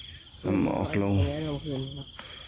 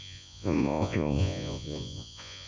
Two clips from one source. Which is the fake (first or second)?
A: second